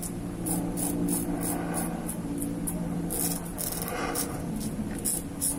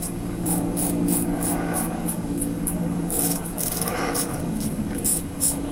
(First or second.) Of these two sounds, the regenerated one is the second